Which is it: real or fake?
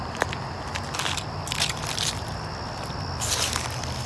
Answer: real